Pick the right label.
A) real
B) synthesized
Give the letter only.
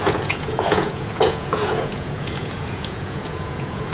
B